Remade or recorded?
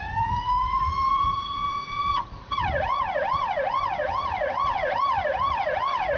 remade